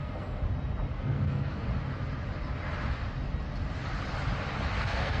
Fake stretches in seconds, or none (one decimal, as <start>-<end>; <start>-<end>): 0.0-0.4; 0.9-1.7; 4.8-5.2